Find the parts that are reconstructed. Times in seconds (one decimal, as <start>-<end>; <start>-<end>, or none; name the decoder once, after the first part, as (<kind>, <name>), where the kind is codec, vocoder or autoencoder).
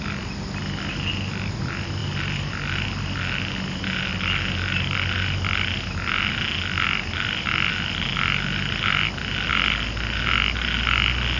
none